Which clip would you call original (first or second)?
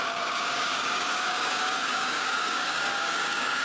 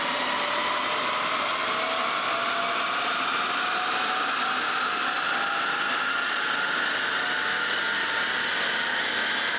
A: second